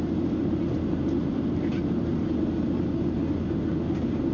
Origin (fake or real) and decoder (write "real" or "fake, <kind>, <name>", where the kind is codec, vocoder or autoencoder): real